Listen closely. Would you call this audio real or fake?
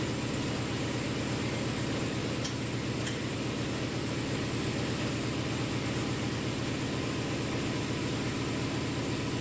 real